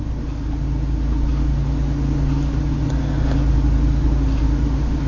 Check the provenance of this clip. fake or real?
real